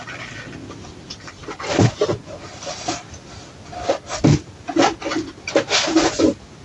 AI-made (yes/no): no